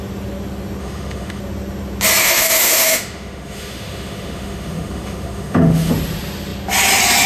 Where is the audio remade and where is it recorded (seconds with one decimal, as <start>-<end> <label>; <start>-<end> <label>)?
0.0-0.8 recorded; 0.8-1.4 remade; 1.4-2.2 recorded; 2.2-5.9 remade; 5.9-7.3 recorded